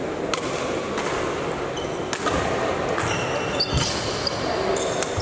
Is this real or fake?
real